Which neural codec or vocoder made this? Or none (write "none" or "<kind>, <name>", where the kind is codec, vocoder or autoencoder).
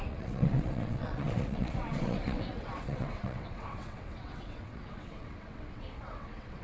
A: vocoder, WaveNeXt